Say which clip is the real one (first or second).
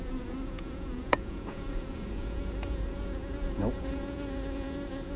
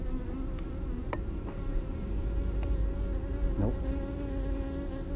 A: second